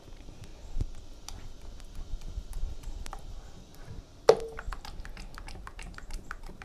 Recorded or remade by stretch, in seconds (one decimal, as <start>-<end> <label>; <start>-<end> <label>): 0.0-0.5 remade; 0.5-2.1 recorded; 2.1-3.7 remade; 3.7-5.4 recorded; 5.4-6.6 remade